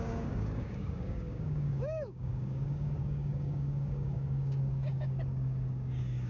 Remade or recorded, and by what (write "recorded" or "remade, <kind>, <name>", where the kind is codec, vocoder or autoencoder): remade, codec, DAC